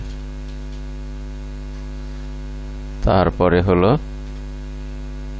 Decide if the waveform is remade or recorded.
recorded